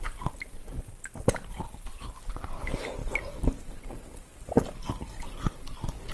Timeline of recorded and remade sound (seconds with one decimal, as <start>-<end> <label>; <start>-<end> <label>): 0.0-6.1 recorded